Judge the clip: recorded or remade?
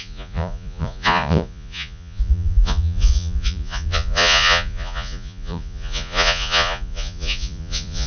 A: remade